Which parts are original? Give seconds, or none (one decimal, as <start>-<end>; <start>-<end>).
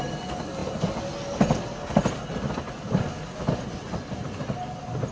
0.0-5.1